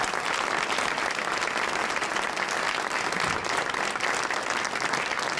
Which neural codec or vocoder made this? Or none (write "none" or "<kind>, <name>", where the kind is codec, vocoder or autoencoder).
none